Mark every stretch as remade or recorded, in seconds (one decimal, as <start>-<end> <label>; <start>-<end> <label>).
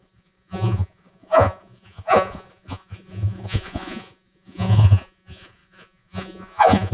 0.0-6.9 remade